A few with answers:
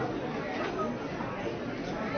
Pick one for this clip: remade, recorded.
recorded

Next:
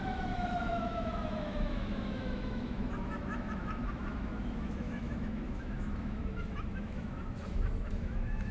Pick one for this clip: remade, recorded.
remade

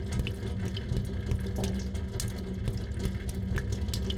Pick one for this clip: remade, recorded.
recorded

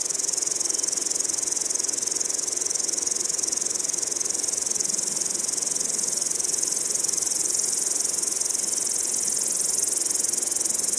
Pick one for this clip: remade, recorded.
recorded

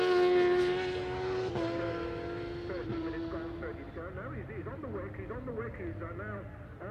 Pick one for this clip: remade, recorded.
recorded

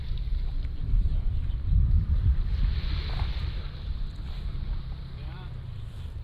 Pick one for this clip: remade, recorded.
remade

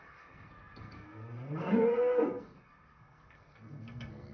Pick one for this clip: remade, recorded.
remade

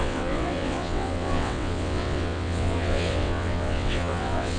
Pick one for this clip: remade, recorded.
remade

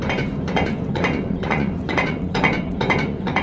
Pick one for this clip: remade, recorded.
remade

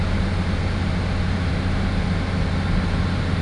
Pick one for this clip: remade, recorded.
recorded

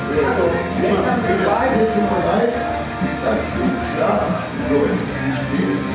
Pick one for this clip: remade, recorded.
recorded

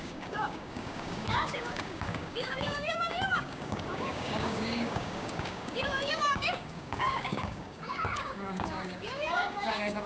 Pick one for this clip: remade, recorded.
remade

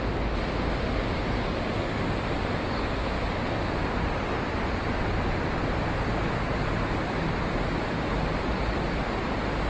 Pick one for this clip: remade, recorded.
recorded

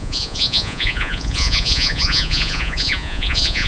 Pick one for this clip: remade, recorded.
remade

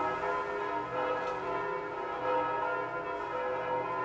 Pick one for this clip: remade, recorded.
recorded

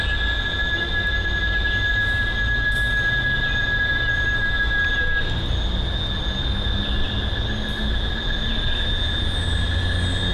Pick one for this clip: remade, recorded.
recorded